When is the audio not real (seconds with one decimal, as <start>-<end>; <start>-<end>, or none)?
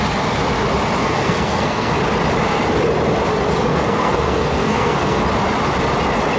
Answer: 1.0-1.9; 3.7-5.2